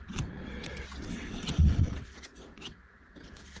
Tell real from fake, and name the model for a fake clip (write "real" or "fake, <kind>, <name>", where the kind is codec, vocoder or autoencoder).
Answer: fake, vocoder, WaveNeXt